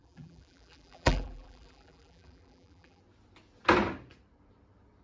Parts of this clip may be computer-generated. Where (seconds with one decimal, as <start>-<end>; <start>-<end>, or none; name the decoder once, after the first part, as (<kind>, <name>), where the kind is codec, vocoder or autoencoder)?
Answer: 0.0-3.0 (vocoder, BigVGAN v2)